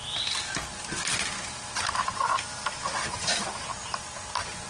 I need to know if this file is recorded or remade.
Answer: recorded